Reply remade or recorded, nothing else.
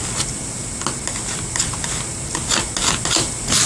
recorded